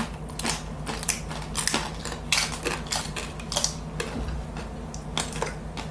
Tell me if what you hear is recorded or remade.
recorded